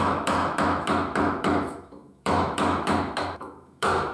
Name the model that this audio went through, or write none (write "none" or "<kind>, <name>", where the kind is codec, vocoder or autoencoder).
autoencoder, DAC-VAE